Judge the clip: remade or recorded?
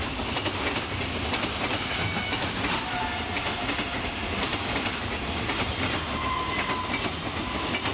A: recorded